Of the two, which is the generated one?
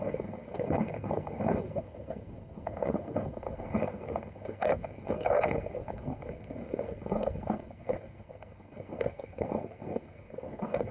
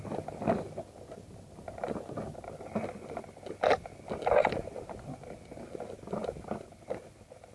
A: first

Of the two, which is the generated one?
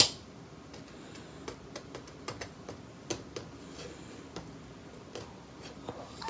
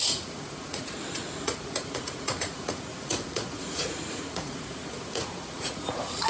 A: second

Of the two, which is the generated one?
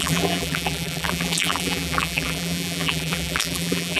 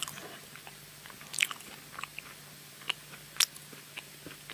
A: first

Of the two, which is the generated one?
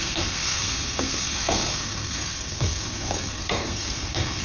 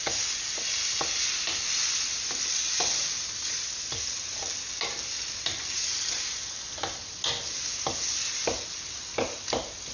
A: first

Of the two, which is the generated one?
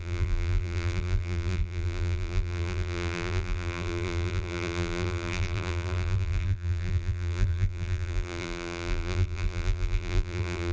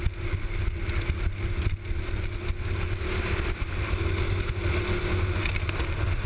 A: first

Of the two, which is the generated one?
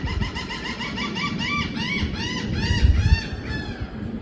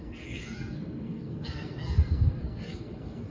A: second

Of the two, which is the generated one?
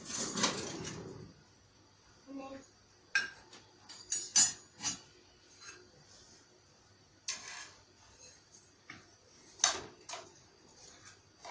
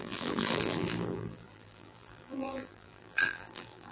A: second